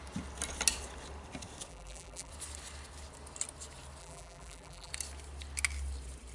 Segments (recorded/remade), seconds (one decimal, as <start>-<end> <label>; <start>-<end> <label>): 0.0-1.7 recorded; 1.7-2.3 remade; 2.3-4.0 recorded; 4.0-4.9 remade; 4.9-6.3 recorded